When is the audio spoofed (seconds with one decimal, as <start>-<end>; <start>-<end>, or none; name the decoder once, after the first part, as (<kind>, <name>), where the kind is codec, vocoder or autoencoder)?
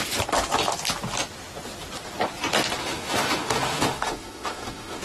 2.8-5.0 (autoencoder, DAC-VAE)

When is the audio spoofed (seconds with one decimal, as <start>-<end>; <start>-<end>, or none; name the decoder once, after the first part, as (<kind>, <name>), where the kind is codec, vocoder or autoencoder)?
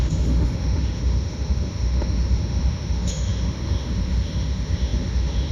0.0-5.5 (autoencoder, DAC-VAE)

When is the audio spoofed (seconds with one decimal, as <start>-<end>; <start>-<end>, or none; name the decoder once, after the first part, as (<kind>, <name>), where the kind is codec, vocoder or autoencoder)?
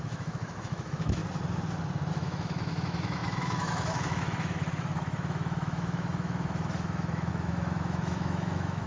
0.0-1.2 (autoencoder, DAC-VAE); 2.1-8.9